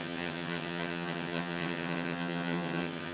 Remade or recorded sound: remade